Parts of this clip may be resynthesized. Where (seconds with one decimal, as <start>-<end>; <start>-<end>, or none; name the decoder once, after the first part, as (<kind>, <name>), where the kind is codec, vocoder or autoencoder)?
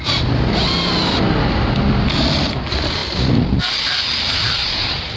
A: none